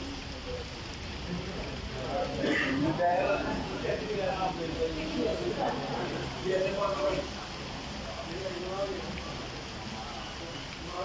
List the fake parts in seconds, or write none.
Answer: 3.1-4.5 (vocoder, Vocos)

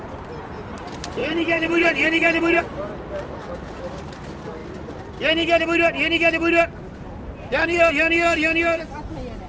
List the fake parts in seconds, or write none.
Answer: 1.2-2.6 (vocoder, Vocos)

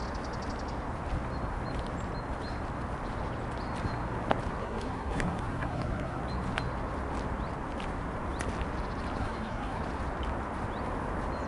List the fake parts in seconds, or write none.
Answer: 4.6-6.2 (codec, SNAC); 9.2-9.8

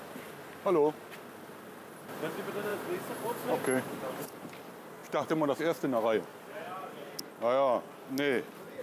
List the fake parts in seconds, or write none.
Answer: 2.7-4.6 (vocoder, BigVGAN v2); 5.0-5.6; 6.3-6.9